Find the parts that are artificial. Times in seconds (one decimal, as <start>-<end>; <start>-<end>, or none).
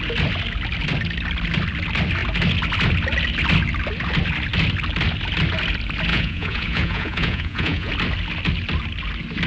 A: 6.1-7.9